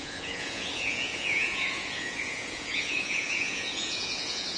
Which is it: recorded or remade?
remade